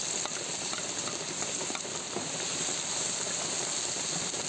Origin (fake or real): real